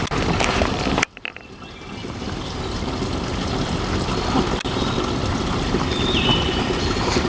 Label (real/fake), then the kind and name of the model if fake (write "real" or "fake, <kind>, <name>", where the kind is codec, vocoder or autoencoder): real